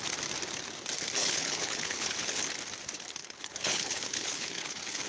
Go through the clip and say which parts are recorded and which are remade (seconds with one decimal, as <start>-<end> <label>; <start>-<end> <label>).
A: 0.0-1.2 recorded; 1.2-2.4 remade; 2.4-3.2 recorded; 3.2-5.1 remade